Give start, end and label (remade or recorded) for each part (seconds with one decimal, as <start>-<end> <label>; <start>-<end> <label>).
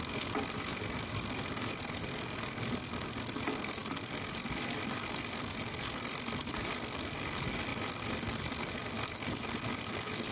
0.0-10.3 recorded